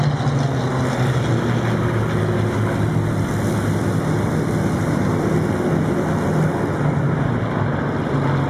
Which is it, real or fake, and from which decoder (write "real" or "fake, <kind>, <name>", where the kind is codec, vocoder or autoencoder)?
real